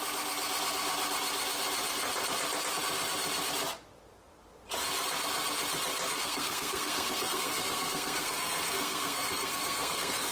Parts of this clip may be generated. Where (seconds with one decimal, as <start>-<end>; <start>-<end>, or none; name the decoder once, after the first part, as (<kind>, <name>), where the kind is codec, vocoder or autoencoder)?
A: 6.2-10.3 (codec, SNAC)